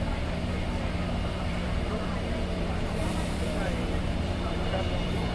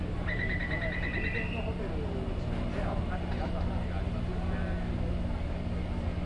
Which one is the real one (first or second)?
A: second